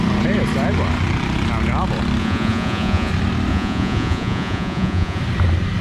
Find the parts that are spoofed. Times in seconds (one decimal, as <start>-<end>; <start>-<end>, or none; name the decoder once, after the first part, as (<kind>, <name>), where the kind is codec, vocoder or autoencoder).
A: 2.2-3.1 (vocoder, Vocos); 3.5-5.2